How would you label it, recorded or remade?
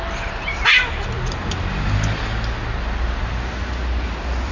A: recorded